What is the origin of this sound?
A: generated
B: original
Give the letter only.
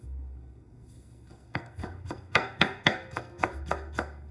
A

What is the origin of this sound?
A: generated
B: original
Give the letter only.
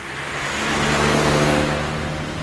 B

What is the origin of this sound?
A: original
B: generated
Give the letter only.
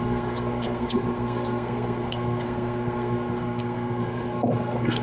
B